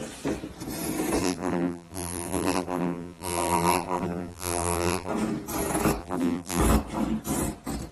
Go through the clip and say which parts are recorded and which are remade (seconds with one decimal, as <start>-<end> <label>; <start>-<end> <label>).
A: 0.0-1.2 recorded; 1.2-5.1 remade; 5.1-6.0 recorded; 6.0-6.6 remade; 6.6-7.9 recorded